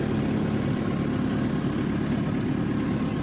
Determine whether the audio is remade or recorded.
recorded